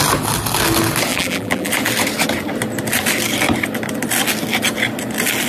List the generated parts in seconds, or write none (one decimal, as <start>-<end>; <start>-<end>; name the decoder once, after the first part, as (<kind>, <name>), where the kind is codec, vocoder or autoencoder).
1.1-1.7 (vocoder, BigVGAN v2)